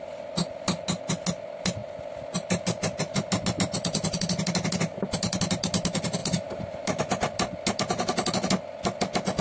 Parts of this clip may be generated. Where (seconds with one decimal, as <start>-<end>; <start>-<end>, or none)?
6.2-7.0